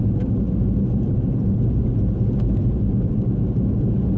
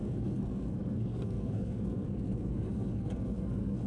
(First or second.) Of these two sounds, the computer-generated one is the second